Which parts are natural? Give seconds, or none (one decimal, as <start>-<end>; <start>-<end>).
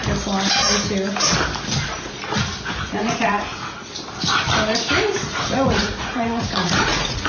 0.0-2.7; 3.9-5.1